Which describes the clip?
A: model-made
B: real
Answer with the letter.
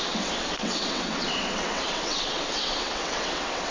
A